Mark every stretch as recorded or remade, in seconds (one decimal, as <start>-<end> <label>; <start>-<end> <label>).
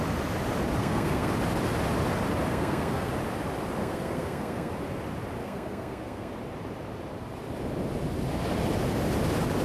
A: 0.0-0.8 recorded; 0.8-1.3 remade; 1.3-2.5 recorded; 2.5-3.1 remade; 3.1-3.8 recorded; 3.8-4.7 remade; 4.7-5.4 recorded; 5.4-6.3 remade; 6.3-9.6 recorded